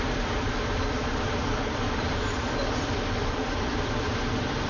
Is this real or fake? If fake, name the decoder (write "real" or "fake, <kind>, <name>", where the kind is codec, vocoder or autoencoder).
fake, vocoder, BigVGAN v2